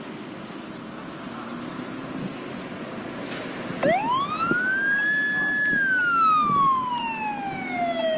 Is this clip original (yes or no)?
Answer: yes